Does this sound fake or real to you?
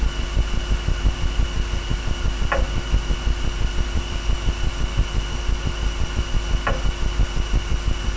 real